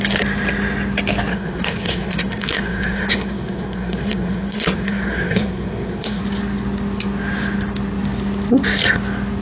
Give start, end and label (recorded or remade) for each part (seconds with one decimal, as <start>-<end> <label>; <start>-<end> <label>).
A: 0.0-1.3 recorded; 1.3-6.2 remade; 6.2-9.4 recorded